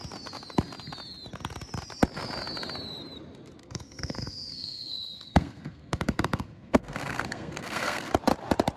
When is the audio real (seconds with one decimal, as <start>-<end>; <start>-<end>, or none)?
0.0-3.6; 8.1-8.8